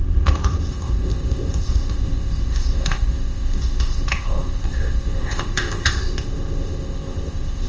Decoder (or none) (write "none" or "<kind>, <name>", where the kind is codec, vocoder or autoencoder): codec, ZipCodec